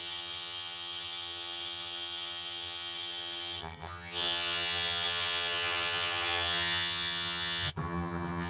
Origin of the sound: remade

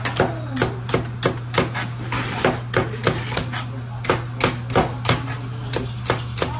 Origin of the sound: recorded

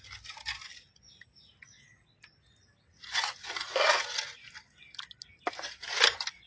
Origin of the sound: recorded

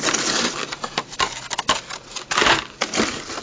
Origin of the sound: recorded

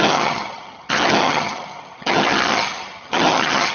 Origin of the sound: remade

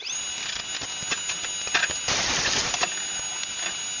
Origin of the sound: recorded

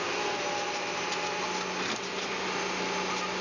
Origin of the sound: recorded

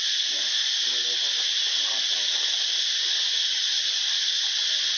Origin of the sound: recorded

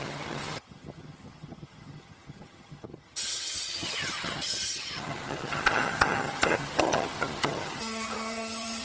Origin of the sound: remade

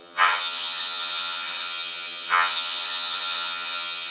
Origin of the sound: remade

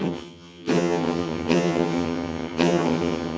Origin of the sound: remade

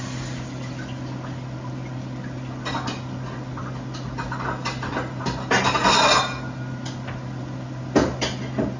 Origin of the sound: recorded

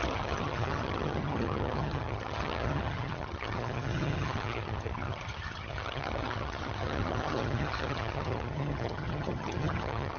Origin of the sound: remade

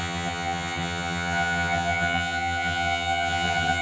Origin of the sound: remade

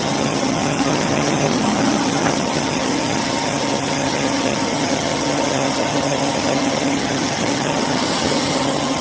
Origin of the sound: remade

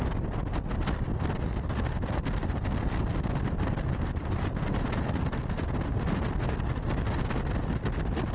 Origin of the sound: recorded